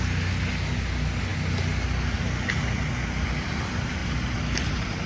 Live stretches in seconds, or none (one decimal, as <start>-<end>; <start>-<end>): 0.0-5.1